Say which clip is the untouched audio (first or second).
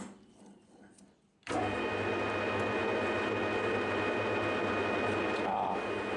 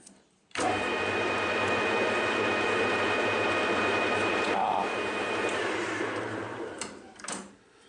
first